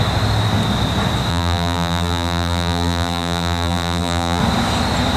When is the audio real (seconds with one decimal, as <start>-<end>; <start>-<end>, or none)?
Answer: 0.0-1.3; 4.4-5.2